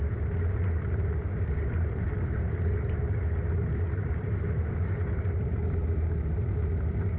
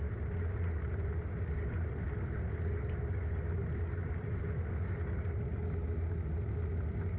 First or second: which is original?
second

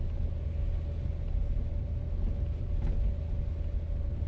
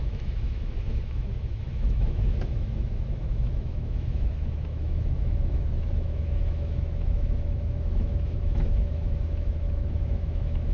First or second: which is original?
first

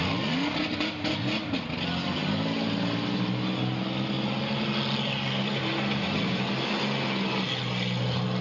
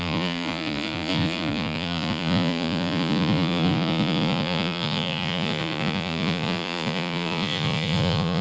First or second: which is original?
first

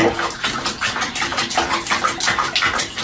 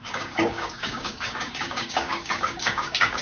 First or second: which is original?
first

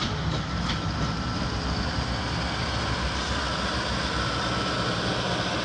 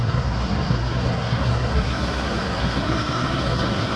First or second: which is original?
first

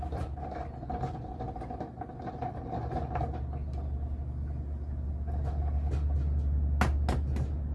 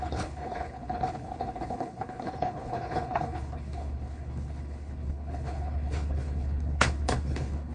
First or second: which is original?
first